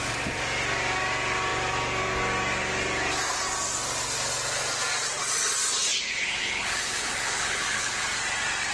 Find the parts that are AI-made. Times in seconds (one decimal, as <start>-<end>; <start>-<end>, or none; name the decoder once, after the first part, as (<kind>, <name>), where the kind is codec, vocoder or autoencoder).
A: 5.9-8.0 (codec, HILCodec)